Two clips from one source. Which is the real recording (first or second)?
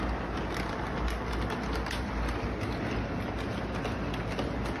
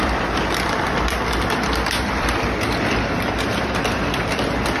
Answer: first